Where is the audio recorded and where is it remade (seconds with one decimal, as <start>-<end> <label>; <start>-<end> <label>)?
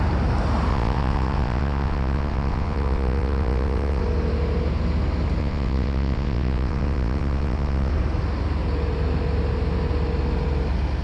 0.0-0.7 recorded; 0.7-4.0 remade; 4.0-5.4 recorded; 5.4-7.9 remade; 7.9-11.0 recorded